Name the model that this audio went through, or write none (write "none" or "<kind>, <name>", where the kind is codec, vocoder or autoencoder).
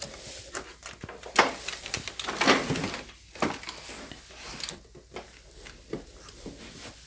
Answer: none